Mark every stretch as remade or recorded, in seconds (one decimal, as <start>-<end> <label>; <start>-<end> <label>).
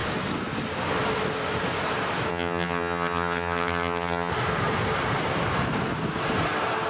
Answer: 0.0-2.3 recorded; 2.3-4.3 remade; 4.3-6.9 recorded